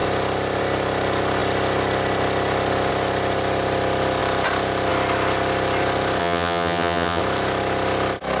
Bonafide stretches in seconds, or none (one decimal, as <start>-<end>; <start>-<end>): 0.0-6.2; 7.2-8.4